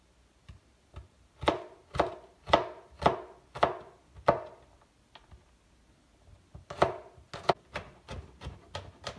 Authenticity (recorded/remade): recorded